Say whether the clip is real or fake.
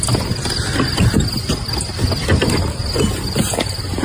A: real